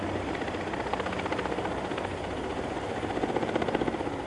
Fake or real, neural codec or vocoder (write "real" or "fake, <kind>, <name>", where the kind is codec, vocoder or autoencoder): real